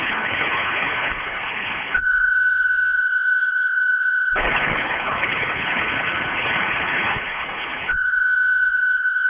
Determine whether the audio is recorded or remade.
remade